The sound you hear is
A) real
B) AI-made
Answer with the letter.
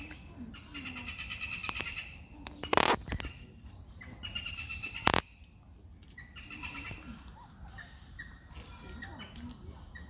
B